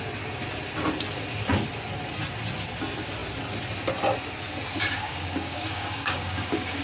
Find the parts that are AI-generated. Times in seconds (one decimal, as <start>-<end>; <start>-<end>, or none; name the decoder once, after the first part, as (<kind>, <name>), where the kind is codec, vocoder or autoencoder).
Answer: 4.8-6.8 (codec, DAC)